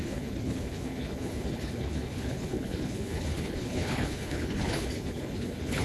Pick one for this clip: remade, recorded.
remade